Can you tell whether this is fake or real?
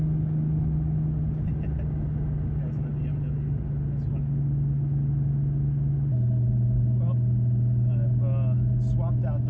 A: real